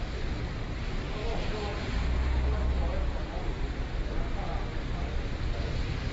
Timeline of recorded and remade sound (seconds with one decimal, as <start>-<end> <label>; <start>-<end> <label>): 0.0-6.1 recorded

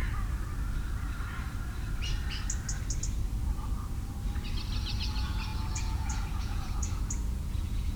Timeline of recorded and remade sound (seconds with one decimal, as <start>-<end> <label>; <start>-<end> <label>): 0.0-4.8 recorded; 4.8-8.0 remade

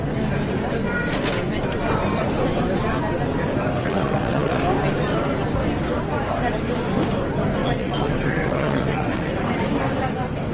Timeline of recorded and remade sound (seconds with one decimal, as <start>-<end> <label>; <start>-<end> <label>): 0.0-3.8 recorded; 3.8-4.6 remade; 4.6-7.6 recorded; 7.6-9.3 remade; 9.3-10.5 recorded

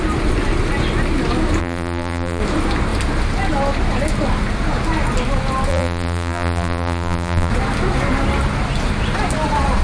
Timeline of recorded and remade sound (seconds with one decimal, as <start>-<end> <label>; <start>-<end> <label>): 0.0-1.6 recorded; 1.6-2.4 remade; 2.4-5.7 recorded; 5.7-7.5 remade; 7.5-9.8 recorded

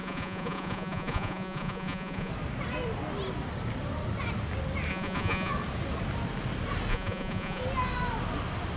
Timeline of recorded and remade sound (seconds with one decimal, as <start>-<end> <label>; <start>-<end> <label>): 0.0-2.3 remade; 2.3-4.9 recorded; 4.9-5.5 remade; 5.5-6.9 recorded; 6.9-7.6 remade; 7.6-8.8 recorded